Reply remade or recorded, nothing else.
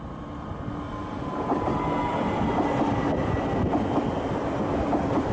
recorded